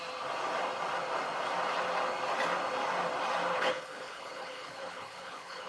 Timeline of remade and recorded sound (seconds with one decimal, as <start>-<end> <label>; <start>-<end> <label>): 0.0-3.5 recorded; 3.5-5.7 remade